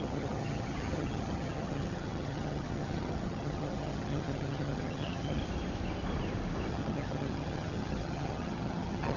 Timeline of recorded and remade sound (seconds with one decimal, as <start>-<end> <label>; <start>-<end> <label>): 0.0-5.4 remade; 5.4-6.7 recorded; 6.7-9.2 remade